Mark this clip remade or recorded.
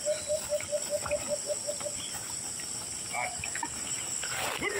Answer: recorded